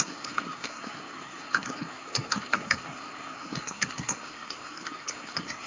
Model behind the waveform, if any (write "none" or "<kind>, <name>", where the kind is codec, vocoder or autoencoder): codec, SNAC